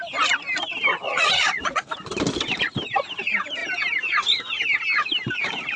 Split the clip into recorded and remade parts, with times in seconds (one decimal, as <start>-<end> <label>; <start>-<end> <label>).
0.0-0.9 recorded; 0.9-1.8 remade; 1.8-5.8 recorded